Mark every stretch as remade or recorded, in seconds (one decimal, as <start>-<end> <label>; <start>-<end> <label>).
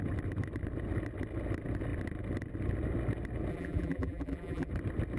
0.0-3.5 recorded; 3.5-4.7 remade; 4.7-5.2 recorded